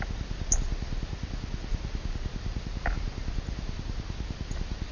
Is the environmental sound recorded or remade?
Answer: recorded